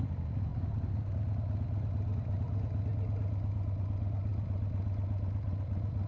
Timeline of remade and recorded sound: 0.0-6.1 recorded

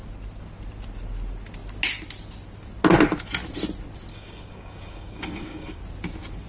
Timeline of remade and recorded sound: 0.0-4.1 recorded; 4.1-5.8 remade; 5.8-6.5 recorded

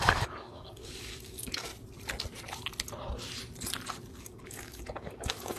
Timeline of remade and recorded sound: 0.0-1.7 remade; 1.7-4.2 recorded; 4.2-5.6 remade

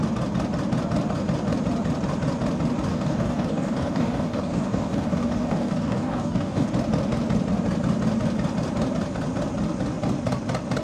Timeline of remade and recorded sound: 0.0-2.9 recorded; 2.9-6.7 remade; 6.7-10.8 recorded

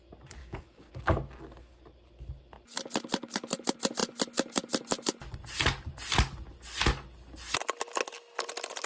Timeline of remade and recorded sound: 0.0-0.4 recorded; 0.4-0.9 remade; 0.9-8.9 recorded